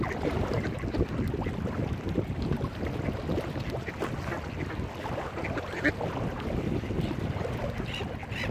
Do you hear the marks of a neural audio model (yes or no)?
no